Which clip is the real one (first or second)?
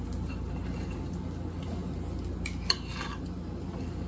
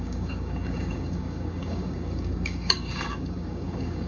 first